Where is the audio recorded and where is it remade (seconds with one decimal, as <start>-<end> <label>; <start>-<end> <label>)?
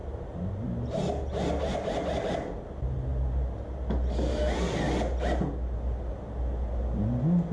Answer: 0.0-7.5 recorded